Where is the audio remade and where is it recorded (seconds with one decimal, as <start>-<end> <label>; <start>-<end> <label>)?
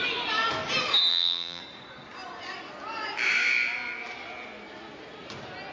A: 0.0-1.1 recorded; 1.1-1.6 remade; 1.6-5.7 recorded